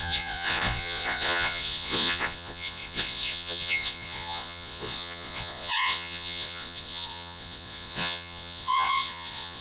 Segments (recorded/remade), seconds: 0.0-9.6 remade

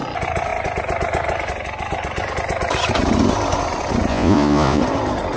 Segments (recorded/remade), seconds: 0.0-4.1 recorded; 4.1-4.8 remade; 4.8-5.4 recorded

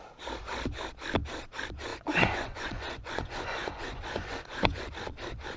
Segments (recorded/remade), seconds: 0.0-1.9 recorded; 1.9-4.9 remade; 4.9-5.6 recorded